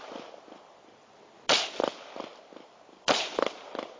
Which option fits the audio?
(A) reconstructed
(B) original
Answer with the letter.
B